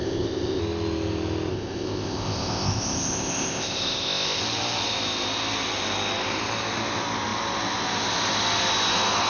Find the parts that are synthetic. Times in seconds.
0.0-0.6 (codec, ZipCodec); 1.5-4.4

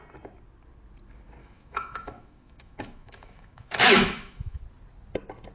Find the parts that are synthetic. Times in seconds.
1.4-4.6 (autoencoder, DAC-VAE)